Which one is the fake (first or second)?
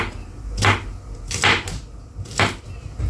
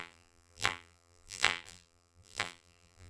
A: second